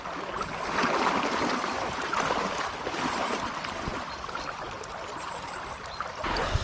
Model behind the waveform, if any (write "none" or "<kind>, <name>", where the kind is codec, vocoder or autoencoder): none